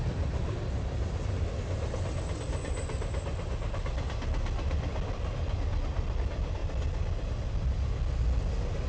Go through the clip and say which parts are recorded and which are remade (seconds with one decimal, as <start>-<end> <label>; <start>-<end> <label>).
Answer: 0.0-8.9 recorded